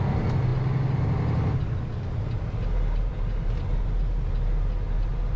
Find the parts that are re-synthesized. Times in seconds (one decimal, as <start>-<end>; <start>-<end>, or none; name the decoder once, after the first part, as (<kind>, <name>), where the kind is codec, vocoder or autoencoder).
none